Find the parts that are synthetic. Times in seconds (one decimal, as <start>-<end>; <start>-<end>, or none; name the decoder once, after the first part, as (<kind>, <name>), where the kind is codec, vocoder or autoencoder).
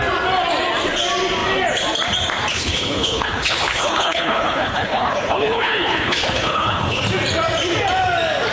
2.5-7.0 (codec, HILCodec)